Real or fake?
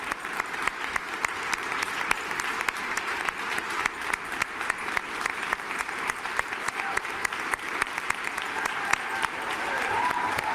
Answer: fake